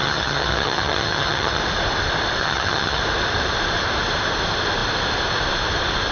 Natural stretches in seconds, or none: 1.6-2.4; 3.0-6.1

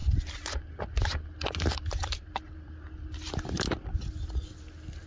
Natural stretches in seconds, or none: 0.0-5.1

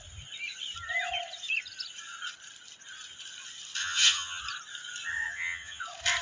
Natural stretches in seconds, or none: 0.0-3.8; 4.4-5.1; 5.8-6.2

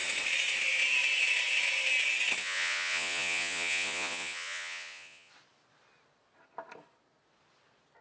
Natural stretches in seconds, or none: 0.0-2.4; 5.3-8.0

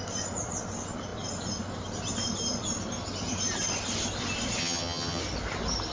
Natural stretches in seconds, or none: 0.0-4.6; 5.2-5.9

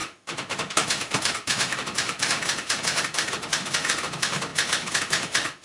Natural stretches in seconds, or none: none